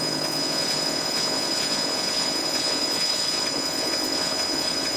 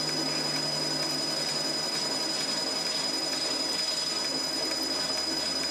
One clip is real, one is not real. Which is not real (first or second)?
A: first